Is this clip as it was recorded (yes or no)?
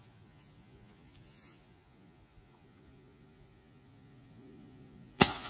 no